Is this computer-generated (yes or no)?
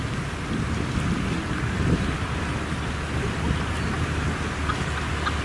no